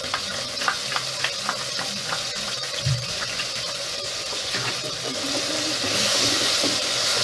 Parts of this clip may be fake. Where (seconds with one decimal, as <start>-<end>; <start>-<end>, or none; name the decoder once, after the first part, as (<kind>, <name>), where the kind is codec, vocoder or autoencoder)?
0.0-0.8 (vocoder, Vocos); 2.0-4.8; 6.0-7.2